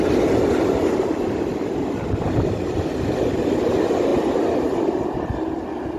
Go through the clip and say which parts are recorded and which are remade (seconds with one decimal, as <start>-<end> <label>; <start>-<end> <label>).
0.0-6.0 recorded